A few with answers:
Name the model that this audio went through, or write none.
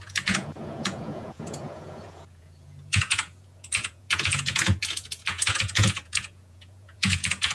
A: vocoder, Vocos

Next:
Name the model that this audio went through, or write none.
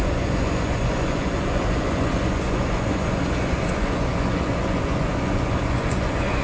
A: vocoder, Vocos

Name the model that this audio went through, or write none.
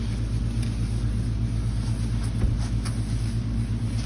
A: none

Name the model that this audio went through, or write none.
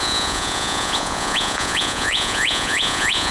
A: vocoder, Vocos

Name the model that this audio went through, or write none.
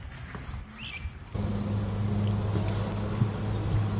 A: none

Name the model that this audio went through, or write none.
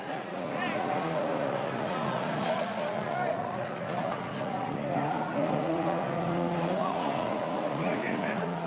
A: vocoder, Vocos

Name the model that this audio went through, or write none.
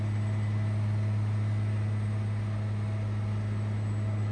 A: none